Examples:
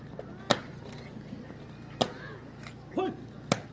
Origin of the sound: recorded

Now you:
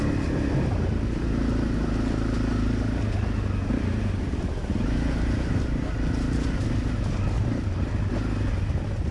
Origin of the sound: recorded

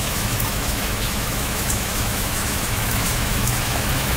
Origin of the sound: remade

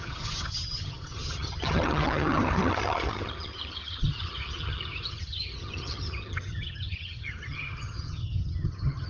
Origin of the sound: remade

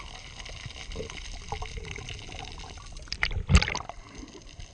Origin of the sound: recorded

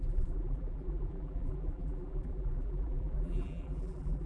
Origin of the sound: remade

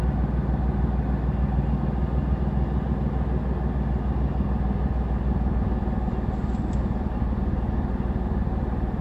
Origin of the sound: recorded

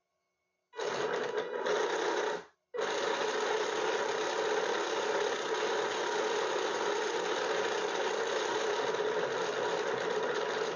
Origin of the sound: recorded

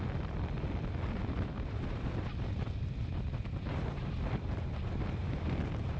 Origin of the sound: remade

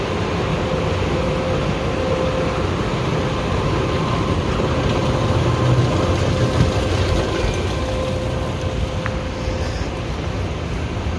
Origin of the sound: recorded